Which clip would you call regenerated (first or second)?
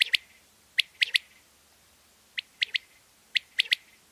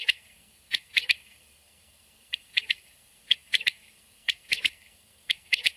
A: second